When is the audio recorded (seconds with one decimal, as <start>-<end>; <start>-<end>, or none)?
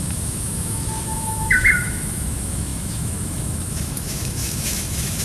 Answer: none